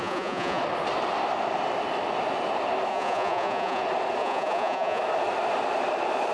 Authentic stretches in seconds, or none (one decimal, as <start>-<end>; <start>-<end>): 0.6-2.9; 3.8-4.2; 5.0-6.3